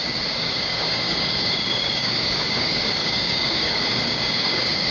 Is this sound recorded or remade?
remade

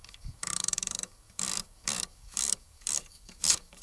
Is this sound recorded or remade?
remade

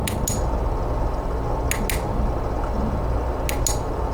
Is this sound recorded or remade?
recorded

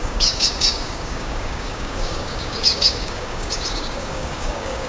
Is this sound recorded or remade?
remade